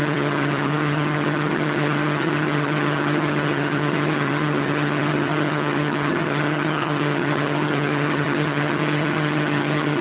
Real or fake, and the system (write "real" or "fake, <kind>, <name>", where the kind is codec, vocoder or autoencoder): fake, vocoder, HiFi-GAN